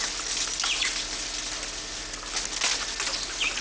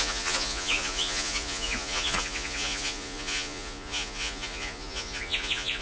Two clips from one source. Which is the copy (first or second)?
second